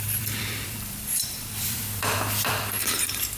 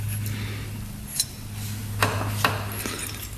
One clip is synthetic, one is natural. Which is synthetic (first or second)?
first